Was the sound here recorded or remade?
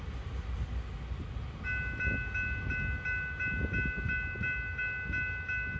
recorded